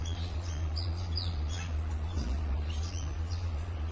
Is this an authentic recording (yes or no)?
no